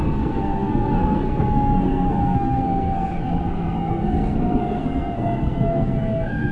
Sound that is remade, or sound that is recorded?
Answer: remade